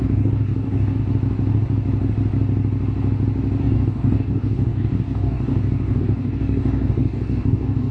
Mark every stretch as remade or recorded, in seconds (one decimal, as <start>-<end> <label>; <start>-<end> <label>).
0.0-1.0 remade; 1.0-3.6 recorded; 3.6-7.9 remade